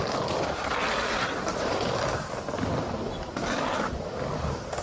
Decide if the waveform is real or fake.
real